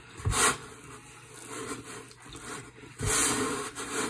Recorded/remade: recorded